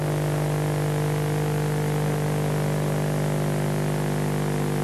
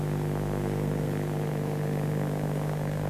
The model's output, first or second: second